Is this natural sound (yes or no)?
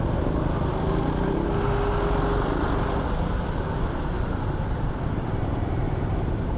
yes